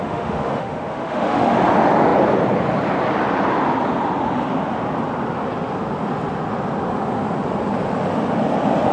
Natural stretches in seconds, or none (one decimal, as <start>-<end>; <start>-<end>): 1.5-8.9